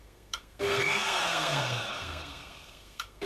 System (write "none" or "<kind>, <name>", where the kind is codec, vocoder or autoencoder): codec, SNAC